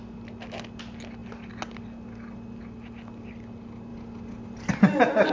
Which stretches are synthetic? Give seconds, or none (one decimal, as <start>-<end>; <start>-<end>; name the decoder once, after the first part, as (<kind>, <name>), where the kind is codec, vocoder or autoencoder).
none